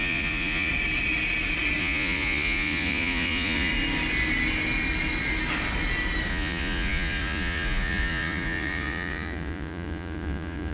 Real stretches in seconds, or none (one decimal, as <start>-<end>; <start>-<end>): 0.7-1.8; 3.7-6.3